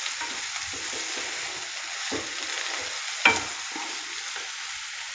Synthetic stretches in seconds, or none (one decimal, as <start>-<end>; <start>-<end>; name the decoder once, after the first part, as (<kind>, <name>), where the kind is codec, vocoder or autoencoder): none